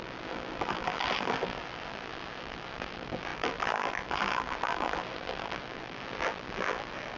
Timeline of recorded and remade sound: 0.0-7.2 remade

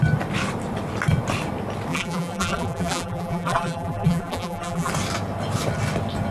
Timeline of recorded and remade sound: 0.0-1.9 recorded; 1.9-4.9 remade; 4.9-6.3 recorded

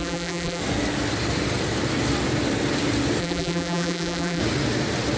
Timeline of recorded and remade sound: 0.0-0.6 remade; 0.6-3.2 recorded; 3.2-4.4 remade; 4.4-5.2 recorded

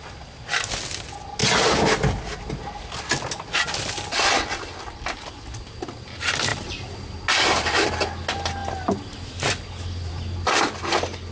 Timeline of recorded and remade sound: 0.0-6.5 recorded; 6.5-7.9 remade; 7.9-11.3 recorded

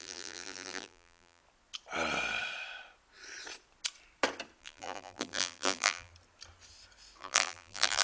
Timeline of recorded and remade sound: 0.0-1.4 remade; 1.4-4.6 recorded; 4.6-6.1 remade; 6.1-7.2 recorded; 7.2-8.0 remade

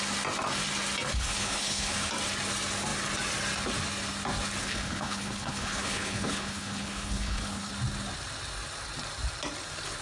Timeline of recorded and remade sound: 0.0-1.1 recorded; 1.1-2.1 remade; 2.1-4.6 recorded; 4.6-7.7 remade; 7.7-10.0 recorded

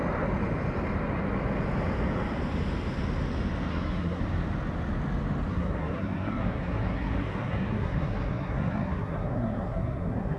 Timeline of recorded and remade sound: 0.0-3.7 recorded; 3.7-4.2 remade; 4.2-5.5 recorded; 5.5-10.4 remade

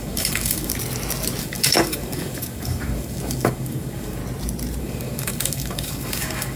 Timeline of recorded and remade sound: 0.0-0.7 remade; 0.7-1.4 recorded; 1.4-4.2 remade; 4.2-4.8 recorded; 4.8-6.6 remade